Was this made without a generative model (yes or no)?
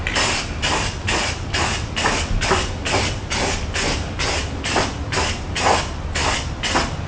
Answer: yes